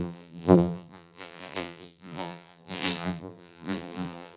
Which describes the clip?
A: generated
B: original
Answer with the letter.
A